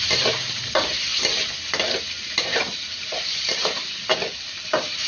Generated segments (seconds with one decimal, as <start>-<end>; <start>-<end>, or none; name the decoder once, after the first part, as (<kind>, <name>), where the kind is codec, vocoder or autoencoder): 0.0-1.1 (vocoder, BigVGAN v2); 2.1-4.1